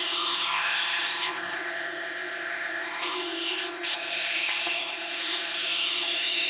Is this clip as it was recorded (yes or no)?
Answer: no